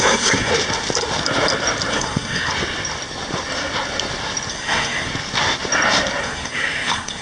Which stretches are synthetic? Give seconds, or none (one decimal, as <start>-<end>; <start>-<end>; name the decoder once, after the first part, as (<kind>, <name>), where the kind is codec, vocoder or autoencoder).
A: 0.0-0.5 (codec, SNAC); 1.9-2.5; 4.5-5.1; 6.2-7.2